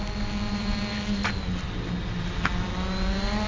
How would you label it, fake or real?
real